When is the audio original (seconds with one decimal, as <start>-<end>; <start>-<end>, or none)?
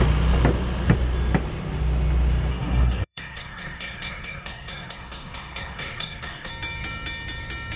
0.0-2.5; 6.5-7.8